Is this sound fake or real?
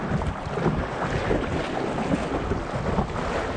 real